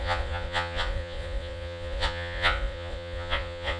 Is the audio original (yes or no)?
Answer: no